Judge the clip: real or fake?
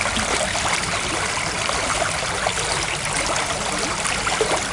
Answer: real